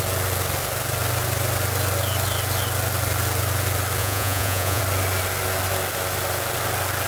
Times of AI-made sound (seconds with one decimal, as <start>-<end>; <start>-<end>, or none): 4.0-4.8